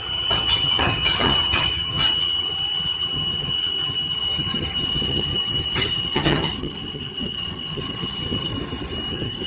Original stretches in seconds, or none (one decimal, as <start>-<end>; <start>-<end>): 8.5-9.1